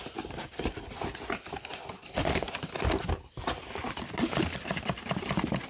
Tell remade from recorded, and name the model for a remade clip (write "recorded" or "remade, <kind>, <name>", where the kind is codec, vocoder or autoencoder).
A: recorded